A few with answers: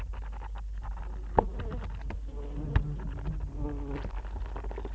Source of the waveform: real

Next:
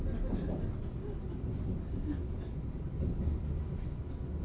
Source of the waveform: real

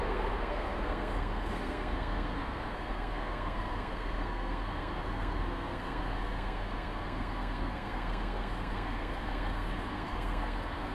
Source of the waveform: fake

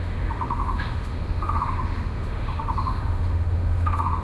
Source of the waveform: fake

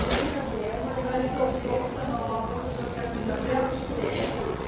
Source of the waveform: fake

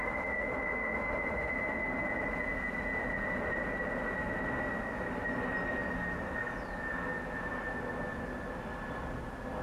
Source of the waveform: real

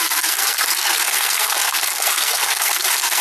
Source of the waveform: fake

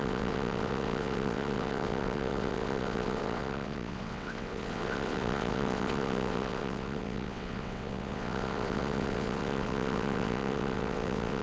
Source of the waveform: fake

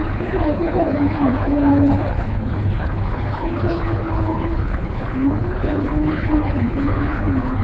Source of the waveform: fake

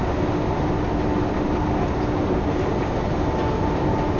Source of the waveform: real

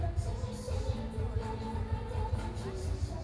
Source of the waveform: real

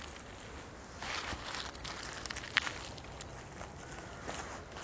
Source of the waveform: real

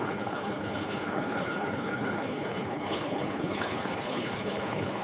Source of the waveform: fake